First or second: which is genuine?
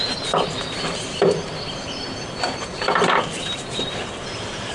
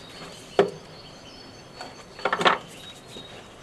second